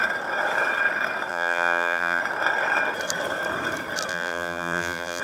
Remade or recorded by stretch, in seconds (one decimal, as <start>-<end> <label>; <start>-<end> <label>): 0.0-1.3 recorded; 1.3-2.2 remade; 2.2-4.1 recorded; 4.1-5.2 remade